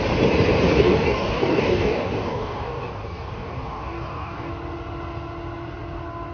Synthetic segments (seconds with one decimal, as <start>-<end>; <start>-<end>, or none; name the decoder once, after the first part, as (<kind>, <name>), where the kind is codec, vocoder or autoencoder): 0.7-4.5 (codec, DAC)